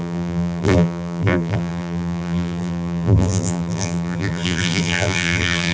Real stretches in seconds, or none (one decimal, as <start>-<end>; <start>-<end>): none